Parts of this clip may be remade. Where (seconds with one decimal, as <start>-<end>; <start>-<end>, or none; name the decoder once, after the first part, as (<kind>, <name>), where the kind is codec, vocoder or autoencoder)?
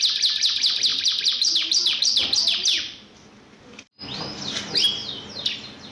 0.9-3.4 (vocoder, BigVGAN v2)